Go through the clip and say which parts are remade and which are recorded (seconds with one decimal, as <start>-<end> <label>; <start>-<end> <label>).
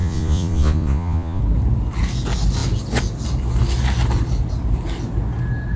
0.0-1.4 remade; 1.4-5.8 recorded